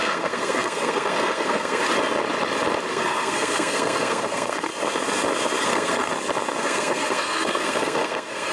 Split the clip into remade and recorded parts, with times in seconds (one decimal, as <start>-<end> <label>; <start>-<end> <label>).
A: 0.0-1.8 remade; 1.8-2.9 recorded; 2.9-4.7 remade; 4.7-5.6 recorded; 5.6-6.1 remade; 6.1-6.6 recorded; 6.6-8.5 remade